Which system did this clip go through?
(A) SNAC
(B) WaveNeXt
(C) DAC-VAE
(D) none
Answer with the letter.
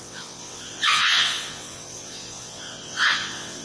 B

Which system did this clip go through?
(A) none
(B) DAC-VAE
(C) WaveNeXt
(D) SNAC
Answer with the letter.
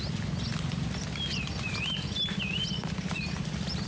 A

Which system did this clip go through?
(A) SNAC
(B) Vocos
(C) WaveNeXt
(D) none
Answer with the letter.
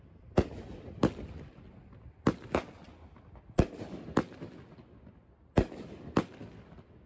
D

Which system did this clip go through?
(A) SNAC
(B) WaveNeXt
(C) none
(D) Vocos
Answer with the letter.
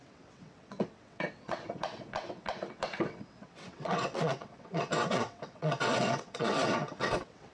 B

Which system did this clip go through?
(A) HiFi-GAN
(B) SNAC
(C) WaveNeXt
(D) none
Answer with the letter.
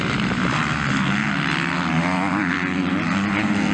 D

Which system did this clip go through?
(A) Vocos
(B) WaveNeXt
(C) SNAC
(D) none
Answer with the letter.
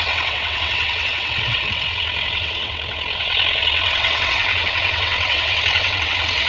B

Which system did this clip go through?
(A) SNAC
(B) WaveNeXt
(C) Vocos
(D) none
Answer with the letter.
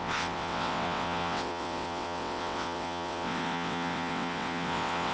B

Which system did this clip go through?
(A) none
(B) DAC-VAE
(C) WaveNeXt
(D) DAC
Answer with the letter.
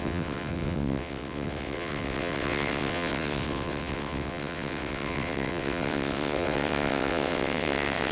C